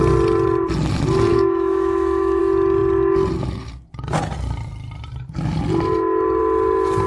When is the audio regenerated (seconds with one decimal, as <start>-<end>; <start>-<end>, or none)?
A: 1.3-2.4